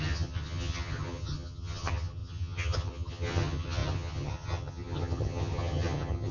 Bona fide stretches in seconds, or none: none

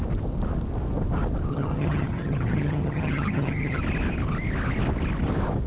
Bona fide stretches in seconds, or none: 0.0-1.5; 3.8-5.7

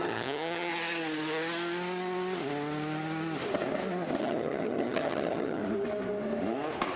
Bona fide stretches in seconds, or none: 0.7-4.2; 5.6-7.0

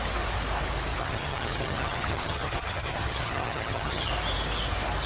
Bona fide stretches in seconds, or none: 0.0-1.0; 4.1-5.1

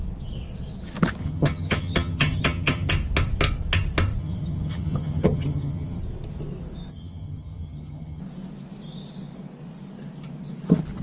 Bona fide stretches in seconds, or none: 0.0-1.2; 2.9-4.2; 6.0-6.9; 8.2-11.0

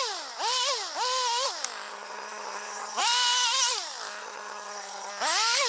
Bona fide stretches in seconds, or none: 0.0-1.9; 3.0-4.2; 5.1-5.7